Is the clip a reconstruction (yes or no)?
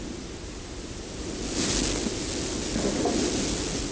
no